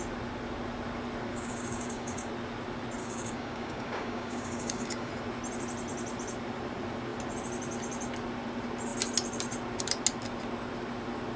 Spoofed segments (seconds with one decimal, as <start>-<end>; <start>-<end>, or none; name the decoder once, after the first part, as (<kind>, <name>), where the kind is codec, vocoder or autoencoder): 1.3-2.3 (codec, DAC); 3.0-5.1